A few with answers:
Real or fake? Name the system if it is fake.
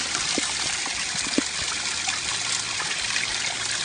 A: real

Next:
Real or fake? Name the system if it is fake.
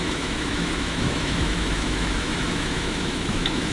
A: fake, autoencoder, DAC-VAE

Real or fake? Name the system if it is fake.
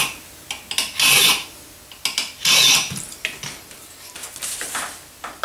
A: real